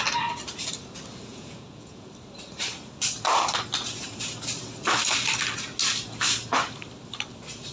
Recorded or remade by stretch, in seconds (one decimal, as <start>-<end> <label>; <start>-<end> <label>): 0.0-1.3 recorded; 1.3-2.1 remade; 2.1-7.7 recorded